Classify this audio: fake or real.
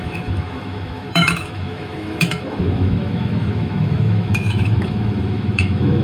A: fake